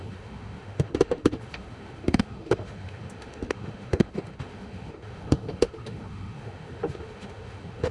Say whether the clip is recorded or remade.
remade